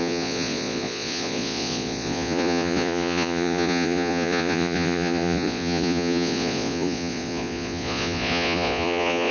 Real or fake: fake